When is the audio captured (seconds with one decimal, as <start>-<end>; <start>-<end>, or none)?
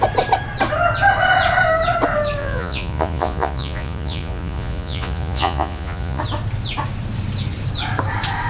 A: 0.0-2.4; 6.2-8.5